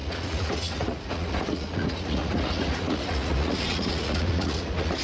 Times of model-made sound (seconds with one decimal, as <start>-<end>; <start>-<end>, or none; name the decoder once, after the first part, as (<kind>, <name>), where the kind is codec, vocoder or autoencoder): 0.0-5.0 (vocoder, Vocos)